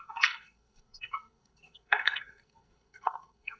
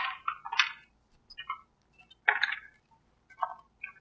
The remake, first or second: first